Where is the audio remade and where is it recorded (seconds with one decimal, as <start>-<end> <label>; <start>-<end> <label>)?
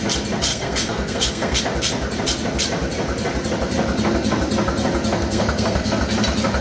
0.0-0.5 recorded; 0.5-1.6 remade; 1.6-5.1 recorded; 5.1-6.0 remade; 6.0-6.6 recorded